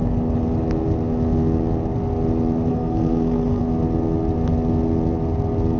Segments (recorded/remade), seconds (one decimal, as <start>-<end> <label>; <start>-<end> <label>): 0.0-2.7 recorded; 2.7-3.6 remade; 3.6-5.8 recorded

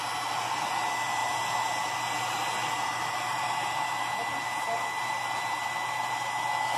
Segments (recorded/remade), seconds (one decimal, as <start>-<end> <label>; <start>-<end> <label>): 0.0-6.8 recorded

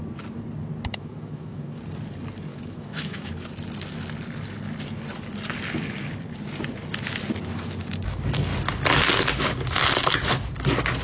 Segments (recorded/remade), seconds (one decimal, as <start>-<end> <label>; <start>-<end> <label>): 0.0-0.9 recorded; 0.9-1.8 remade; 1.8-2.5 recorded; 2.5-3.3 remade; 3.3-11.0 recorded

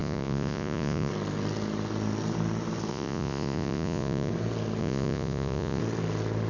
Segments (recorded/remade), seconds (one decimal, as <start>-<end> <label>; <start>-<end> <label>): 0.0-1.1 remade; 1.1-2.9 recorded; 2.9-4.3 remade; 4.3-4.8 recorded; 4.8-5.8 remade; 5.8-6.5 recorded

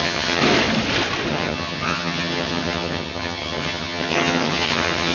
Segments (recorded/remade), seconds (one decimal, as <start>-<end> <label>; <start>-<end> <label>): 0.0-0.4 remade; 0.4-1.3 recorded; 1.3-5.1 remade